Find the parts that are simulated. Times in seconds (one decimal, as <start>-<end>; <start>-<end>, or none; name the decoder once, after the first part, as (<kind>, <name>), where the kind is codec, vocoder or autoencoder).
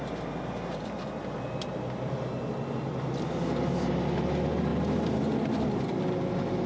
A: none